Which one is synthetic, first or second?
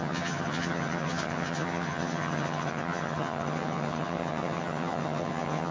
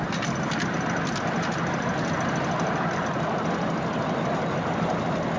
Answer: first